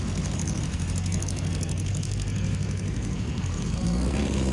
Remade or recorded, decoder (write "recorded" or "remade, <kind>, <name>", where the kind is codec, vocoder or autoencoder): remade, codec, SNAC